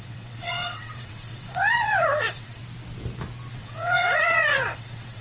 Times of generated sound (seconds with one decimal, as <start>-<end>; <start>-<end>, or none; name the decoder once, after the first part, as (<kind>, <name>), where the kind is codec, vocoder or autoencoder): 0.0-2.6 (vocoder, WaveNeXt); 3.5-5.2